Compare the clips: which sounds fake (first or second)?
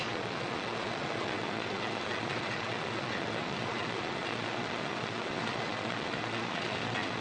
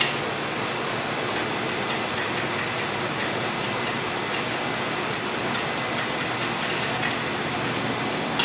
first